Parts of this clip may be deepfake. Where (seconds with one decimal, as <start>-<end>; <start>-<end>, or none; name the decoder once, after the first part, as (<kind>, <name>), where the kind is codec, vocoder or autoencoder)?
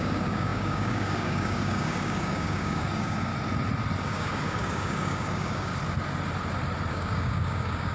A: 0.0-3.3 (codec, DAC); 4.0-5.7; 6.9-7.9